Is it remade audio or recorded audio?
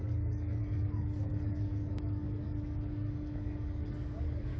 remade